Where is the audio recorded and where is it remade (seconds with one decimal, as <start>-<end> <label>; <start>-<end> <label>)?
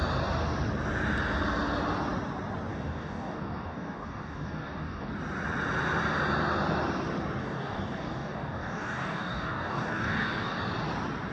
0.0-2.7 recorded; 2.7-5.1 remade; 5.1-7.4 recorded; 7.4-10.6 remade; 10.6-11.3 recorded